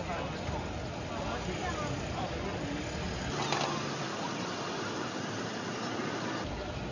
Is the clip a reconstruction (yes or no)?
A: no